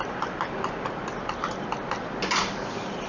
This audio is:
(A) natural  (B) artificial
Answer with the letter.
A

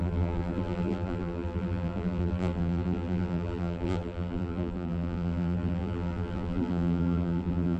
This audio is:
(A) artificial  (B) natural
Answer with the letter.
A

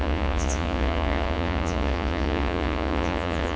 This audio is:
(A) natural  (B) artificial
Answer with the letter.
B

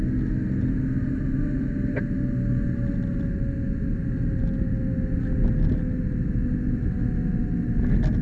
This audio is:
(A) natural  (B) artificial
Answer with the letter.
A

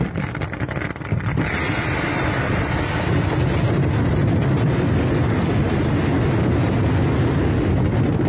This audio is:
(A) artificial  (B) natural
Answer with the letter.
B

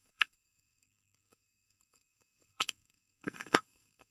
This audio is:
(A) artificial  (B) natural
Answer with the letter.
A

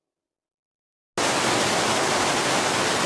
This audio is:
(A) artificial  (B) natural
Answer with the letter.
B